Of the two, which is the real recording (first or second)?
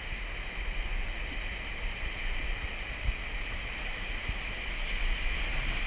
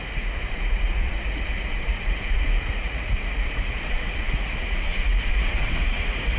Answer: first